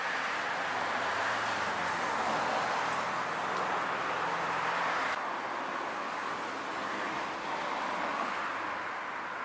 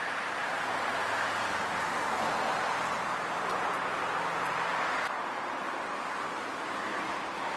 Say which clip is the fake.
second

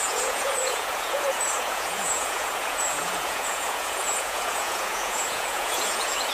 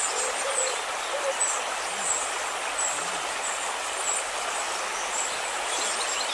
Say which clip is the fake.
first